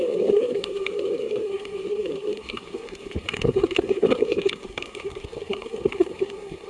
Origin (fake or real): fake